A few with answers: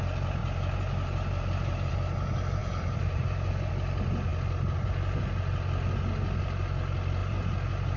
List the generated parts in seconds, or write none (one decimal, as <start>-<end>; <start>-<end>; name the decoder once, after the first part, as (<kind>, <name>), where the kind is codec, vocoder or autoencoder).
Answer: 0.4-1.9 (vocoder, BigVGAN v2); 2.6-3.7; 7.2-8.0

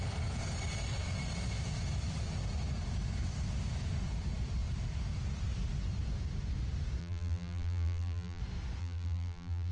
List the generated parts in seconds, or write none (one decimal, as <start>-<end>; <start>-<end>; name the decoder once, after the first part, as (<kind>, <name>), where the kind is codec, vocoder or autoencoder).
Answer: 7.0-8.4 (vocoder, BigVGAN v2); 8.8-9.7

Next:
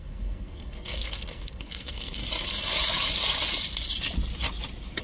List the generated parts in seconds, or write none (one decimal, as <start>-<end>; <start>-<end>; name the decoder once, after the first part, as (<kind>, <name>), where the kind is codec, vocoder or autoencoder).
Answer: 0.0-2.2 (codec, SNAC)

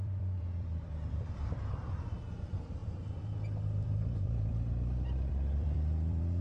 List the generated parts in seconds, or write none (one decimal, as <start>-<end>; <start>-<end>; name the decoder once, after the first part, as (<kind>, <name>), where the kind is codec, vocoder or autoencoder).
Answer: 0.0-6.4 (vocoder, BigVGAN v2)